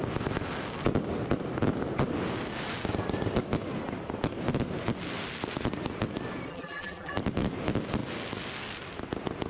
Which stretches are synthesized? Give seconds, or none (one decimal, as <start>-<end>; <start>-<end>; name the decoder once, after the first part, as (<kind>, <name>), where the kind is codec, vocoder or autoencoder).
6.5-7.1 (vocoder, BigVGAN v2)